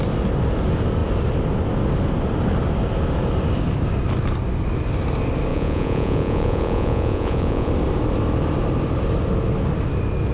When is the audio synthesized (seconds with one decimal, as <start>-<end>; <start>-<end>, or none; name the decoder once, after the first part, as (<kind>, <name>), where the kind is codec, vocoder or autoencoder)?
5.5-7.7 (vocoder, Vocos)